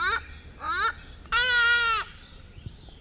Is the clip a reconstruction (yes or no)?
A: no